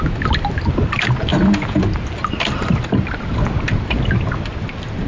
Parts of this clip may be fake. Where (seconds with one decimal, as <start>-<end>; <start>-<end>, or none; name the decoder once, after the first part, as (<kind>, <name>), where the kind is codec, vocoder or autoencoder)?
none